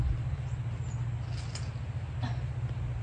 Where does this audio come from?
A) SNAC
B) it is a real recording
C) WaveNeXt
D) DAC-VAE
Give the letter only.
B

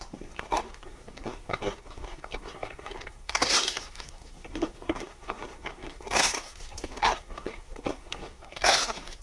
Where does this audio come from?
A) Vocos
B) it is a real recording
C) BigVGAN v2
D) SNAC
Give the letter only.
D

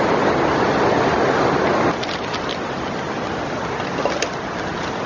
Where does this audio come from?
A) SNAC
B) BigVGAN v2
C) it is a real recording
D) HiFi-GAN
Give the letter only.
C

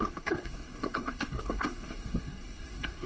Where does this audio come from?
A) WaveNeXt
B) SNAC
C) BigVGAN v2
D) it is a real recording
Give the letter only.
B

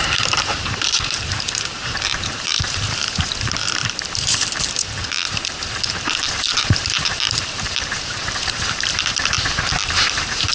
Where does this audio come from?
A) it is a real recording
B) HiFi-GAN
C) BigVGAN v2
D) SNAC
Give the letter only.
C